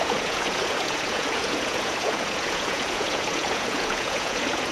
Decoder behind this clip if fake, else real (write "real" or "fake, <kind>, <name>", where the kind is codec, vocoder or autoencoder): fake, vocoder, Vocos